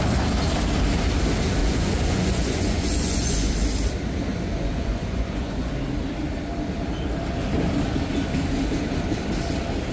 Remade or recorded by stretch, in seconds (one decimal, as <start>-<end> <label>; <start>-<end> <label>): 0.0-1.6 recorded; 1.6-3.5 remade; 3.5-4.3 recorded; 4.3-5.7 remade; 5.7-9.9 recorded

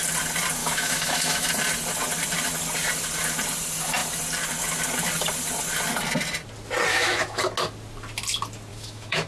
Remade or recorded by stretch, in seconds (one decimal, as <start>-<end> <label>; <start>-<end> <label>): 0.0-0.6 recorded; 0.6-1.5 remade; 1.5-6.9 recorded; 6.9-7.4 remade; 7.4-8.7 recorded; 8.7-9.3 remade

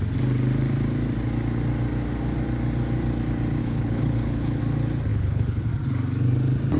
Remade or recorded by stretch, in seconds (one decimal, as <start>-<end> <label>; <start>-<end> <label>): 0.0-3.6 recorded; 3.6-4.6 remade; 4.6-5.1 recorded; 5.1-5.7 remade; 5.7-6.8 recorded